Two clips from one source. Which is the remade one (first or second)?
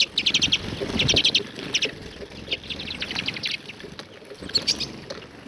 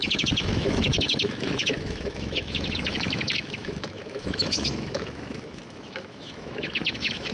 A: second